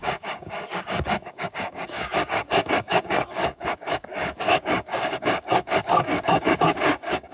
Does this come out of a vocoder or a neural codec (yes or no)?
yes